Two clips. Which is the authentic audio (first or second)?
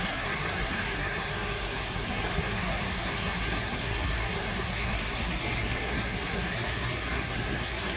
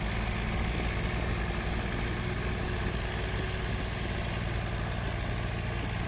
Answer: second